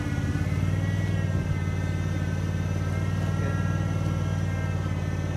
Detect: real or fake real